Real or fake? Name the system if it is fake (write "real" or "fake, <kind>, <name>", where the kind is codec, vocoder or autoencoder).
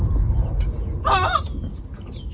real